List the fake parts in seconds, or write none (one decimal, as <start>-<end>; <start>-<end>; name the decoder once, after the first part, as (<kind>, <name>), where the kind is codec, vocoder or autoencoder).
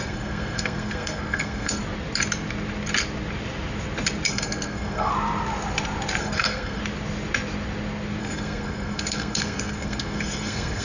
0.0-1.8 (codec, SNAC); 4.3-5.1; 6.2-6.8; 8.2-10.8